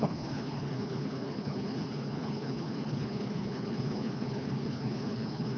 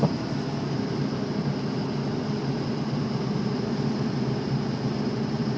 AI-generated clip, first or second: first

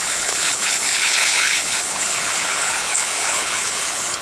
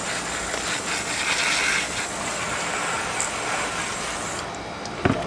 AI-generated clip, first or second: first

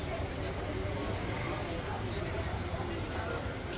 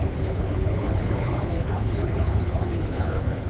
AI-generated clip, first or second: second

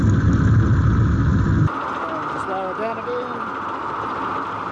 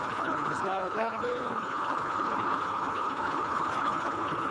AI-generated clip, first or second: second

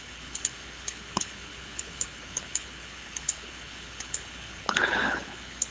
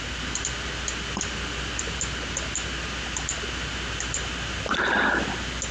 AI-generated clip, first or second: first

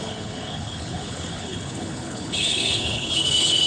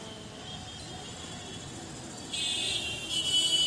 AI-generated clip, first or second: first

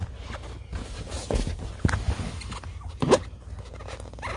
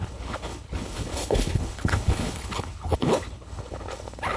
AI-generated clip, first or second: second